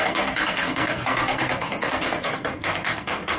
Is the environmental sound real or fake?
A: fake